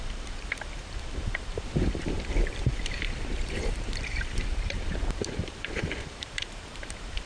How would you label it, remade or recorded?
remade